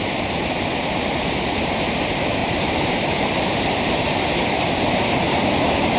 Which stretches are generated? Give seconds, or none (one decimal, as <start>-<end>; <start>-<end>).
2.4-4.7